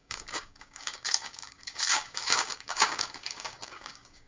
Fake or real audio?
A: fake